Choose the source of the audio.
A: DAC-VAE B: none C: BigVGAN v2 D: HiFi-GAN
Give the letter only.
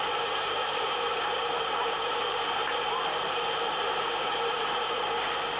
C